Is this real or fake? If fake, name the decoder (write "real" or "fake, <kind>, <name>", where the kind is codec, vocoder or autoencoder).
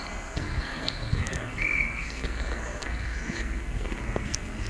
fake, codec, SNAC